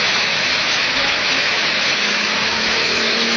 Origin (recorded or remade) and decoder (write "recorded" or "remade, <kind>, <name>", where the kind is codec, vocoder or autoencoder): remade, autoencoder, DAC-VAE